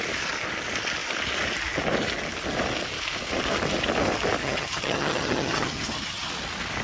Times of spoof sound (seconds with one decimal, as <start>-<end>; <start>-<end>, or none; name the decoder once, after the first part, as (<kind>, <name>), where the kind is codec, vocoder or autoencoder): 4.4-6.3 (vocoder, HiFi-GAN)